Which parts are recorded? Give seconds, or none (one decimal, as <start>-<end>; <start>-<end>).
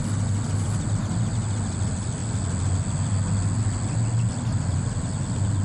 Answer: 0.0-5.6